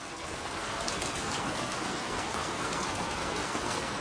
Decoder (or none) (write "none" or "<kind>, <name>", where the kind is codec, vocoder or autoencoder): codec, SNAC